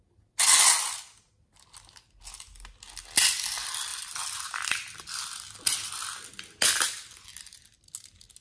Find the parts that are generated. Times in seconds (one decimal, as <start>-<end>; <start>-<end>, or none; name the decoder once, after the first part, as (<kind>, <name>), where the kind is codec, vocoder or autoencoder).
3.9-5.9 (vocoder, BigVGAN v2)